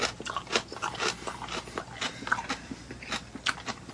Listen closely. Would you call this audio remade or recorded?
recorded